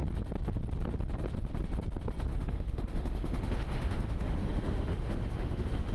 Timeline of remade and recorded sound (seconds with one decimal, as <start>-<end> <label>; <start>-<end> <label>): 0.0-2.3 recorded; 2.3-5.9 remade